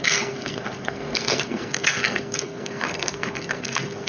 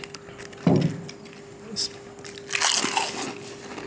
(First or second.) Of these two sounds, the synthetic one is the first